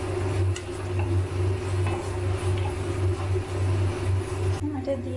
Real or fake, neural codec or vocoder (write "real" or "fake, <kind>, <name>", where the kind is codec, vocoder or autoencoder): real